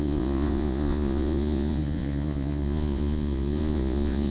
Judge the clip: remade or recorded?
remade